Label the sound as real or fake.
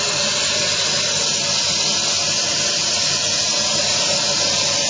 real